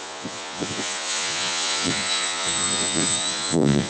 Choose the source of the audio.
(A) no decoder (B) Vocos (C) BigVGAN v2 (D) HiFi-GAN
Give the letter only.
B